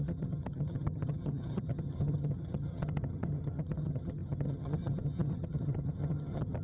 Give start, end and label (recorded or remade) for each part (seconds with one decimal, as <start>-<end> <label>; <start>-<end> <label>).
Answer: 0.0-6.6 remade